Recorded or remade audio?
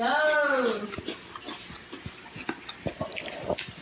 recorded